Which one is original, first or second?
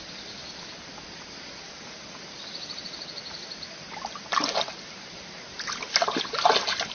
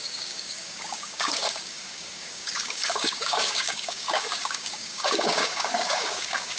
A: first